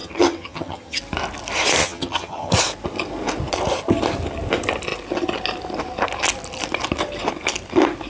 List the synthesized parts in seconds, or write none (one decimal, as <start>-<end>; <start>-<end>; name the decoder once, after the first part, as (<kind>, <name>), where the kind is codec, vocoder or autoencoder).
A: 0.0-1.0 (vocoder, HiFi-GAN); 1.8-2.5